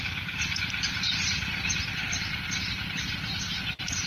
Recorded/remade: recorded